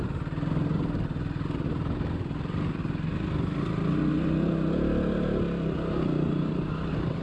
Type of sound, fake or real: real